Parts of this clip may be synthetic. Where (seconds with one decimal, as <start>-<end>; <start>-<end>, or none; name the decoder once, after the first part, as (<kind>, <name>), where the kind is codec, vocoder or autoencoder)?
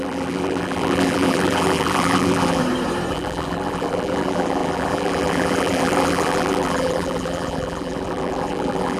0.0-2.6 (vocoder, BigVGAN v2); 3.1-9.0